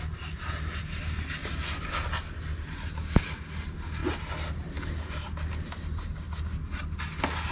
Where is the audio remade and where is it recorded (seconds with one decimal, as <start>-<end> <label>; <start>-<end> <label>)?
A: 0.0-7.5 recorded